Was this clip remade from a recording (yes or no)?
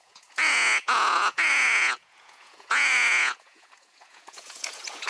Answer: yes